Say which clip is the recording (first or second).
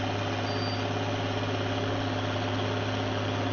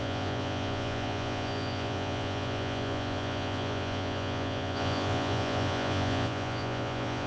first